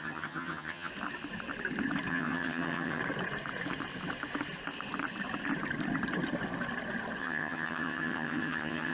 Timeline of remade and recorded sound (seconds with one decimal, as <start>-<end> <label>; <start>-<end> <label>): 0.0-0.9 remade; 0.9-2.1 recorded; 2.1-3.0 remade; 3.0-7.2 recorded; 7.2-8.9 remade